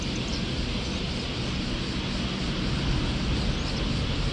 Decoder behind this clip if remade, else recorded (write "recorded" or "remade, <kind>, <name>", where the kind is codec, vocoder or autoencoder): recorded